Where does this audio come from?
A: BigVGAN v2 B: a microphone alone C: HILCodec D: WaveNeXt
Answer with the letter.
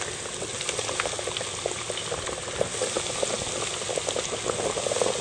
B